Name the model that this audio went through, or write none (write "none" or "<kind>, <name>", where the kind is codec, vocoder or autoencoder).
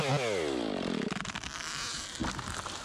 none